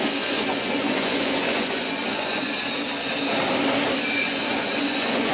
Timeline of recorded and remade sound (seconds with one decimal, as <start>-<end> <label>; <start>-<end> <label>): 0.0-2.5 remade; 2.5-4.1 recorded; 4.1-5.3 remade